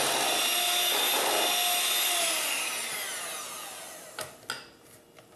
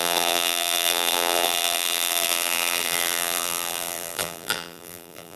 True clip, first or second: first